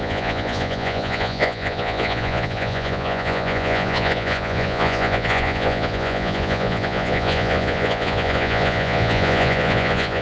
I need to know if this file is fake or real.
fake